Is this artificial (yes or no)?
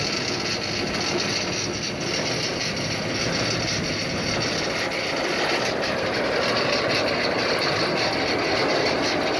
no